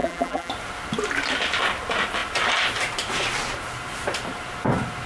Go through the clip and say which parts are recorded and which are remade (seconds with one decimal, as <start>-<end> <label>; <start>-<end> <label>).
0.0-0.5 remade; 0.5-5.1 recorded